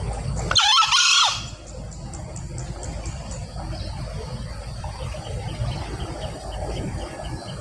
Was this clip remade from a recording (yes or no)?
no